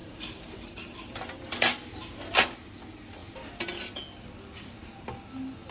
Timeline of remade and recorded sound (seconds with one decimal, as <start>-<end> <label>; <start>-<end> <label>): 0.0-1.2 remade; 1.2-5.7 recorded